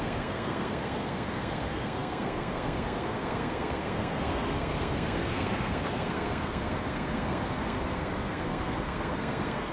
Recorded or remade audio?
remade